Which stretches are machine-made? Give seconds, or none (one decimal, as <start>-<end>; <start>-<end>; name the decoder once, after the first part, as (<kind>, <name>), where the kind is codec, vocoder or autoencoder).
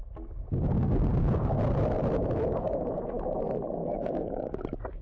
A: 3.8-4.6 (codec, DAC)